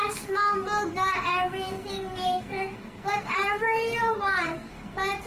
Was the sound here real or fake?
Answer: fake